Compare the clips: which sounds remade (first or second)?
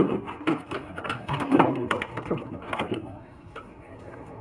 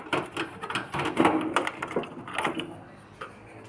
first